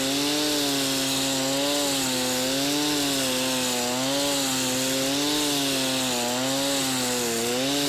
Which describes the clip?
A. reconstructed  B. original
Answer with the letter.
B